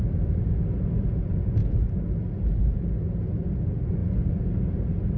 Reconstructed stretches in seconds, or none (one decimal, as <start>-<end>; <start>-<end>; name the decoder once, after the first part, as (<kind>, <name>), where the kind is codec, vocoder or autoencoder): none